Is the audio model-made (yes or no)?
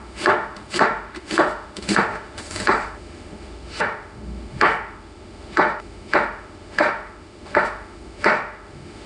yes